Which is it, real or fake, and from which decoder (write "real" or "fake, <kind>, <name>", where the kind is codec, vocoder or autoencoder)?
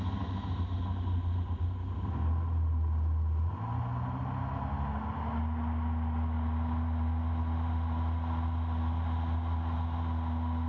real